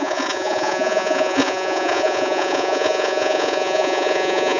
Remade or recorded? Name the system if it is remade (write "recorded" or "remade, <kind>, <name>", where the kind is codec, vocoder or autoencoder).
remade, vocoder, Vocos